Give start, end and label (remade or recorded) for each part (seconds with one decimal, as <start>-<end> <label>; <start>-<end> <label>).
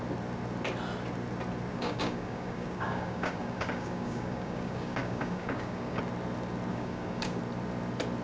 0.0-1.7 recorded; 1.7-6.0 remade; 6.0-6.7 recorded; 6.7-7.4 remade; 7.4-8.2 recorded